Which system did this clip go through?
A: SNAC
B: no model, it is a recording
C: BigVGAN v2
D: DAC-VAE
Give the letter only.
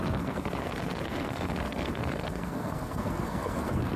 A